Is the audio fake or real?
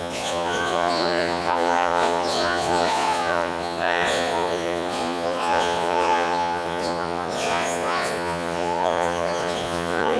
fake